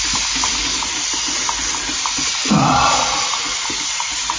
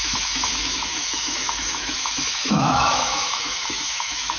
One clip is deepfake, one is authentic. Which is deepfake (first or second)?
second